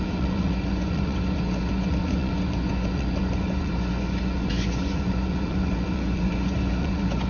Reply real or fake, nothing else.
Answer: fake